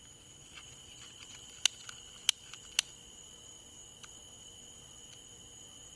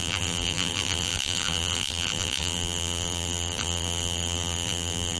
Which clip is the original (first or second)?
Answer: first